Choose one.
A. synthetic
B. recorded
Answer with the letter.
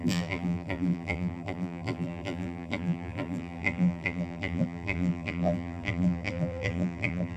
A